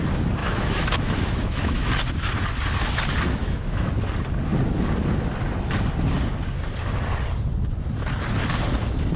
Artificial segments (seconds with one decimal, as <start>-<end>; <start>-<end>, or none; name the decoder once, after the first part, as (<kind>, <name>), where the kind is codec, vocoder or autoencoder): 0.4-1.9 (autoencoder, DAC-VAE); 3.4-3.9